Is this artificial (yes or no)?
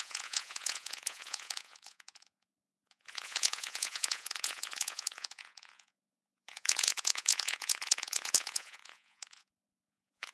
yes